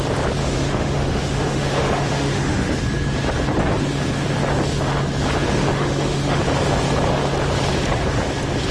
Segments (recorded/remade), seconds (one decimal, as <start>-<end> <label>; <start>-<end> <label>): 0.0-0.4 recorded; 0.4-2.8 remade; 2.8-5.7 recorded; 5.7-6.4 remade; 6.4-8.7 recorded